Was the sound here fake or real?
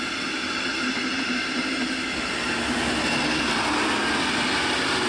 real